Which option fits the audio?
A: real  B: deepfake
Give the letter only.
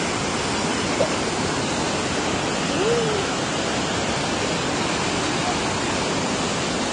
A